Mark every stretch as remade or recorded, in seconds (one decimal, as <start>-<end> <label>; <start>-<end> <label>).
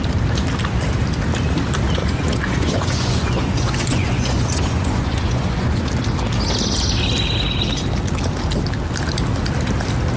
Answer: 0.0-2.0 recorded; 2.0-5.9 remade; 5.9-10.2 recorded